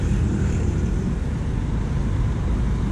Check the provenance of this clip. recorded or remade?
remade